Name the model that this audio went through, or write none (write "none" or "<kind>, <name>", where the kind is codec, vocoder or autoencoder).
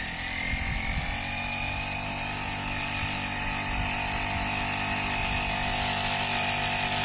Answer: none